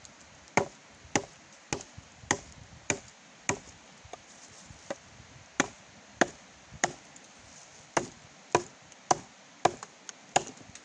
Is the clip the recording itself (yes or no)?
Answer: yes